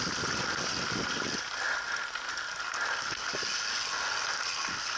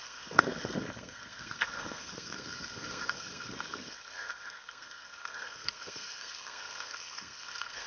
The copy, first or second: second